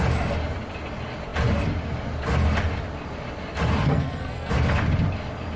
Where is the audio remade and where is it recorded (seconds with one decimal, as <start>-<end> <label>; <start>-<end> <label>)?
0.0-3.9 recorded; 3.9-4.5 remade; 4.5-5.6 recorded